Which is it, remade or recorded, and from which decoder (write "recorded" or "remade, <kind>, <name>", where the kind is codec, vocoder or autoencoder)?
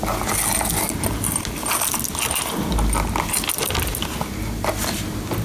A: recorded